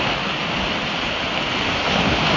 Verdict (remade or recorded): recorded